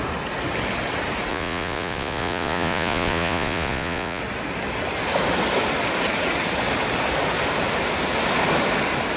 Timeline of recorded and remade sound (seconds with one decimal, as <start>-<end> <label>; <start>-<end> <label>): 0.0-1.3 recorded; 1.3-4.2 remade; 4.2-9.2 recorded